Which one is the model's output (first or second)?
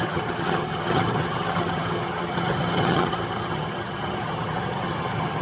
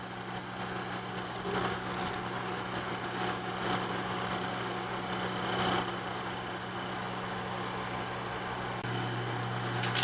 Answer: first